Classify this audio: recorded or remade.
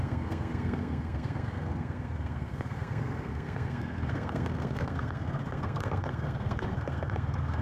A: remade